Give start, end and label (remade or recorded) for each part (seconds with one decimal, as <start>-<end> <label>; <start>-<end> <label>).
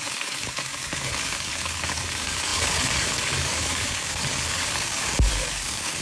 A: 0.0-6.0 remade